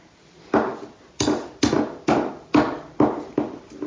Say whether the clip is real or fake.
real